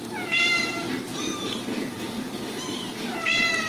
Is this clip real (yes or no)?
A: no